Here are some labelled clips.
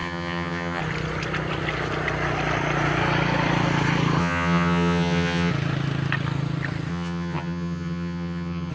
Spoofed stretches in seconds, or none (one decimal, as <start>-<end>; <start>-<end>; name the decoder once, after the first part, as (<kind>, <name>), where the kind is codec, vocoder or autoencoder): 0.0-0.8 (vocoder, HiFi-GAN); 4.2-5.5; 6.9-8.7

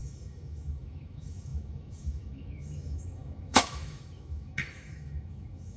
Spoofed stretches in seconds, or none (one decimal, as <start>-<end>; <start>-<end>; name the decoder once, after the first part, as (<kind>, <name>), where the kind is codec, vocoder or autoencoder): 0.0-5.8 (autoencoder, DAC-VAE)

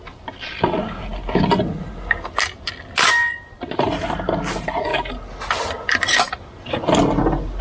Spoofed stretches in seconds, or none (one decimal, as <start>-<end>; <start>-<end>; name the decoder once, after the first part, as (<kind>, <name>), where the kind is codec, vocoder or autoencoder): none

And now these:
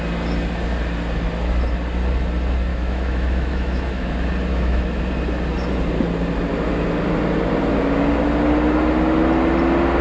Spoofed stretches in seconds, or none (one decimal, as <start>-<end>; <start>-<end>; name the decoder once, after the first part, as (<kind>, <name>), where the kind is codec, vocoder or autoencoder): 2.7-4.1 (autoencoder, DAC-VAE); 4.5-5.0

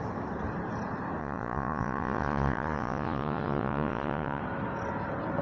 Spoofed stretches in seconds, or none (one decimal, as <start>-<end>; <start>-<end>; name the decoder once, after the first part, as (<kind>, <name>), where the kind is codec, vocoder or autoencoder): 1.2-4.4 (vocoder, Vocos)

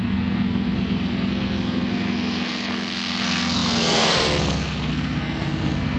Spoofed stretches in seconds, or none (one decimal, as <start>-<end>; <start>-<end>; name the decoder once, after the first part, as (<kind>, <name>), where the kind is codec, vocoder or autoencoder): 0.0-6.0 (codec, SNAC)

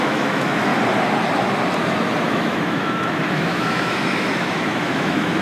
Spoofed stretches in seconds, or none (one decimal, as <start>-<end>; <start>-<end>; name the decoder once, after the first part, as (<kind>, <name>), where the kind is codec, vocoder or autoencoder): 0.0-0.7 (autoencoder, DAC-VAE); 2.3-5.4